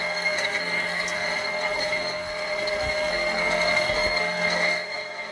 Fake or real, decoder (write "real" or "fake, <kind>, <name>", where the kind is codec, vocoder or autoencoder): fake, codec, SNAC